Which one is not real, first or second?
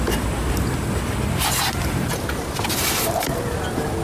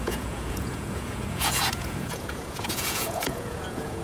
second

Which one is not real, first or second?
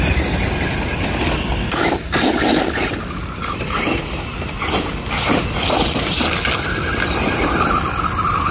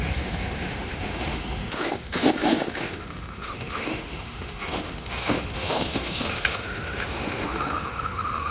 second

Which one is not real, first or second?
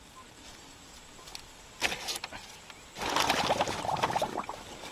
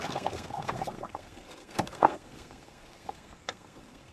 second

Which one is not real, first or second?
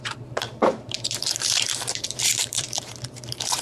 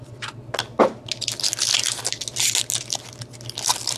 first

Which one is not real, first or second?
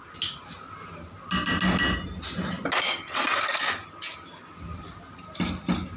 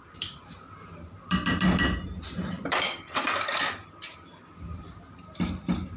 second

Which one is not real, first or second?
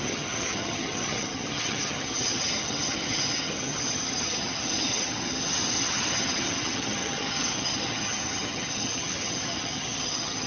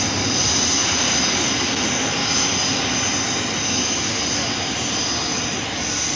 first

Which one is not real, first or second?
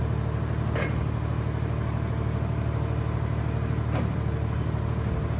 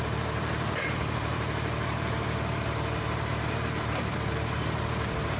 second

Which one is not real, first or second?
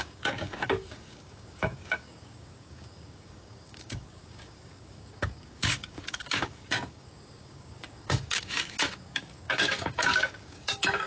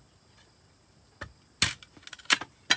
first